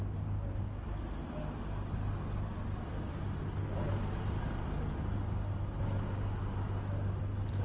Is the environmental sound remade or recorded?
recorded